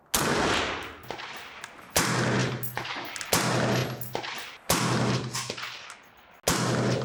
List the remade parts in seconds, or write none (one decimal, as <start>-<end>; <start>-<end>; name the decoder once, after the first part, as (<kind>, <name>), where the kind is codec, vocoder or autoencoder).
none